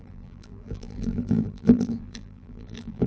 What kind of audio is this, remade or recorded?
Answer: remade